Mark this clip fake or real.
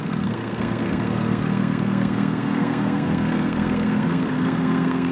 fake